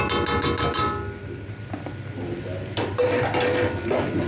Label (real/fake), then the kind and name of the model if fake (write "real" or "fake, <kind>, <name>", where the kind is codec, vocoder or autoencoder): real